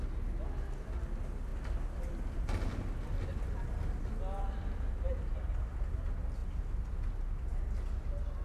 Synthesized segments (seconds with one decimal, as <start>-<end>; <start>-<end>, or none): none